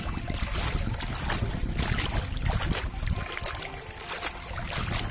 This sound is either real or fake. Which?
real